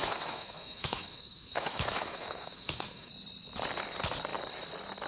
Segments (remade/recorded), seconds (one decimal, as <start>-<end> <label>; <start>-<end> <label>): 0.0-3.1 remade; 3.1-5.1 recorded